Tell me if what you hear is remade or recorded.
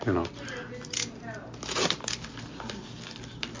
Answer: recorded